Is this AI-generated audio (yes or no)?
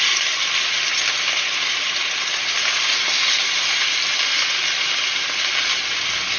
no